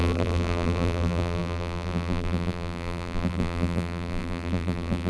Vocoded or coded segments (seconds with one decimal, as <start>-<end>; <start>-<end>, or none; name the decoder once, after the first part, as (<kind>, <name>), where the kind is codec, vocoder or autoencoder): 0.0-5.1 (vocoder, BigVGAN v2)